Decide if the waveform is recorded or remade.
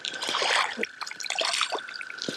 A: remade